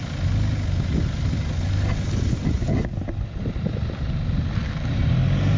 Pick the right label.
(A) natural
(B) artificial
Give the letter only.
A